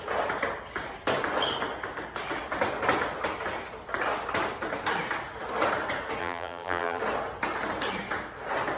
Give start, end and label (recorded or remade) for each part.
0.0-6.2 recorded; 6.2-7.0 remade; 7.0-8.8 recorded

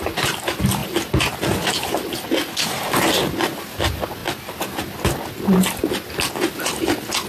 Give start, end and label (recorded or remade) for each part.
0.0-7.3 recorded

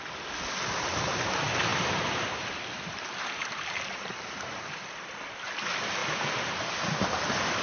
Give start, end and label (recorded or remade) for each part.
0.0-1.7 recorded; 1.7-4.6 remade; 4.6-7.6 recorded

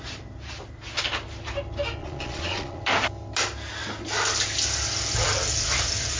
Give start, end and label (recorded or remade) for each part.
0.0-2.0 recorded; 2.0-2.8 remade; 2.8-6.2 recorded